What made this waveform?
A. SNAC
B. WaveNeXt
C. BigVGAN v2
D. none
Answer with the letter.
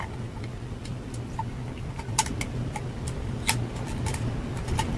D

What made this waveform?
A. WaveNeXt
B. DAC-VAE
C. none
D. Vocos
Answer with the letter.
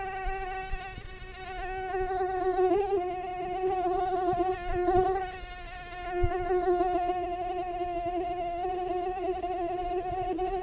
C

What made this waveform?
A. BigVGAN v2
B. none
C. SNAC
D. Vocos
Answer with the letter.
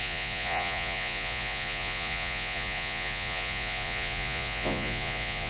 D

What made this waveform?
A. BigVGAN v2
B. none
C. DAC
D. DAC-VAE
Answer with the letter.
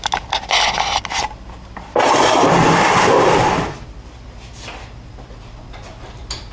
B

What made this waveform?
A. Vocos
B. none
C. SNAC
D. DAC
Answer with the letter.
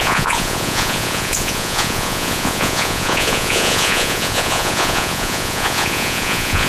A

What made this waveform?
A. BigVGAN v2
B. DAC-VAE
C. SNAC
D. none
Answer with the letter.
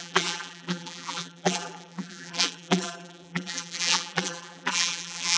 A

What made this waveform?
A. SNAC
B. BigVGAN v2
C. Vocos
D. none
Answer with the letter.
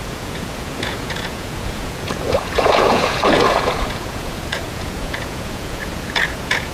C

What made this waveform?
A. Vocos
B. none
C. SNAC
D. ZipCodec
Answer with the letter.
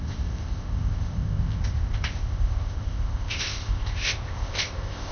D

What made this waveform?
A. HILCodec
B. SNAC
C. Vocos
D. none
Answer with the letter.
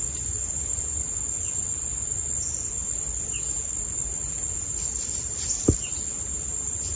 D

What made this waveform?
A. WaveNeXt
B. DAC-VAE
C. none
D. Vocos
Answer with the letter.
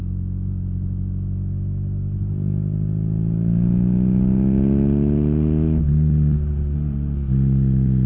C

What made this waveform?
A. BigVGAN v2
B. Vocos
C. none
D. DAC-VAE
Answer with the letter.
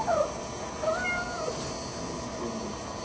C